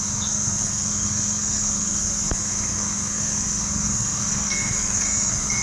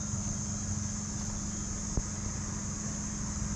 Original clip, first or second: second